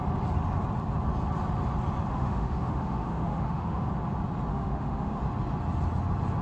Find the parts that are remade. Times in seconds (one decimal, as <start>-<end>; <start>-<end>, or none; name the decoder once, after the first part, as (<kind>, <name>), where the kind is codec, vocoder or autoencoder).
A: 2.1-3.9 (autoencoder, DAC-VAE); 4.5-5.2